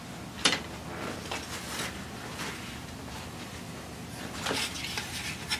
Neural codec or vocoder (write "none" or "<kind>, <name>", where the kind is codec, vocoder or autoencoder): none